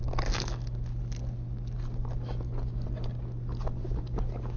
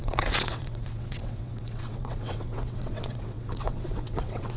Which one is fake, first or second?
second